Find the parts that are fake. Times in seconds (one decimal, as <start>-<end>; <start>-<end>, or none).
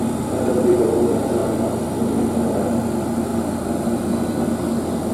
none